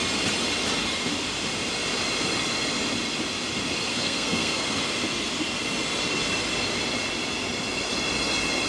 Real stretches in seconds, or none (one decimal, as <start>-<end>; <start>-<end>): 0.0-3.9; 4.7-8.7